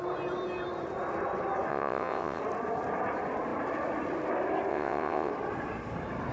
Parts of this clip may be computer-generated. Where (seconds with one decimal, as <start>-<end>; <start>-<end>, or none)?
1.7-2.4; 4.7-5.3